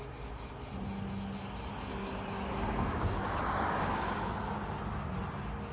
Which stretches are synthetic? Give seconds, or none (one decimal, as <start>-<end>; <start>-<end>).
2.0-4.2